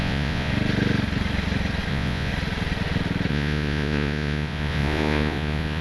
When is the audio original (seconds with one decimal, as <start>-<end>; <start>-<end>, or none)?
0.5-1.9; 2.3-3.3